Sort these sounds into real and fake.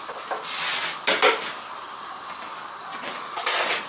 real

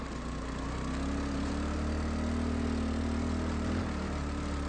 real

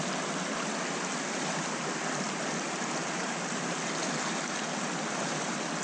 real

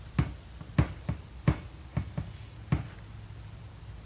real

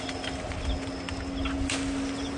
real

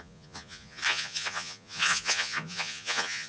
fake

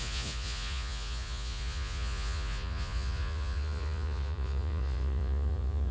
fake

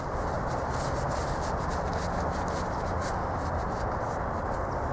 real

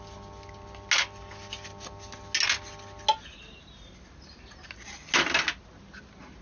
real